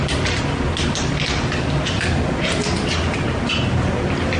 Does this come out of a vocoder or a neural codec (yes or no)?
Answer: no